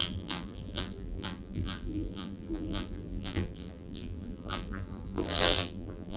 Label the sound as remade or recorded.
remade